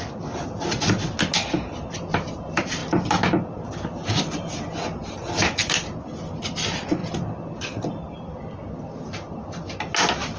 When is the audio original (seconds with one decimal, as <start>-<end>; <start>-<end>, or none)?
0.0-10.4